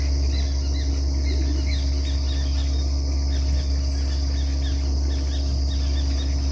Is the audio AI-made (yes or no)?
no